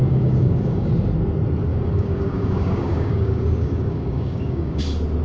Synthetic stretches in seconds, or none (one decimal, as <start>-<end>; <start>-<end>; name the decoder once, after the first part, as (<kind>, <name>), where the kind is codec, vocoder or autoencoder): 0.0-0.9 (codec, DAC); 1.7-4.8